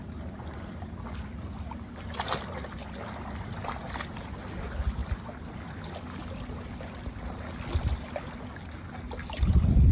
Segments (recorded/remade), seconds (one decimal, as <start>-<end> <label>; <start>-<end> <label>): 0.0-9.9 recorded

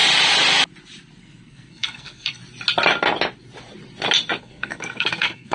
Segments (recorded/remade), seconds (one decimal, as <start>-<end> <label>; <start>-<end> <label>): 0.0-1.2 recorded; 1.2-2.4 remade; 2.4-4.4 recorded; 4.4-5.5 remade

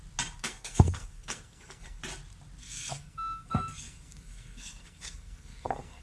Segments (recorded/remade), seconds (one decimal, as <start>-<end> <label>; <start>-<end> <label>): 0.0-0.4 recorded; 0.4-2.0 remade; 2.0-2.6 recorded; 2.6-6.0 remade